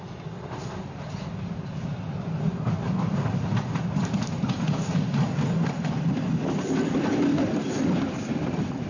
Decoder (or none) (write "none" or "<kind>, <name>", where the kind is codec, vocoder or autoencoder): none